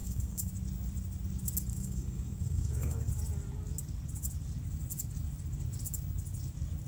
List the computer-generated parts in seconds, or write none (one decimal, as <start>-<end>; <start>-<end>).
0.0-0.5; 1.7-3.1